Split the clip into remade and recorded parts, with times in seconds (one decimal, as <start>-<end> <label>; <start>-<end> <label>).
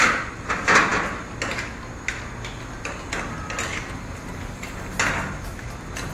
0.0-6.1 recorded